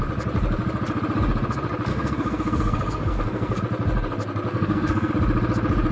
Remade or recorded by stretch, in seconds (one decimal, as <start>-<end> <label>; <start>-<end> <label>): 0.0-1.9 recorded; 1.9-3.6 remade; 3.6-4.5 recorded; 4.5-5.1 remade; 5.1-5.9 recorded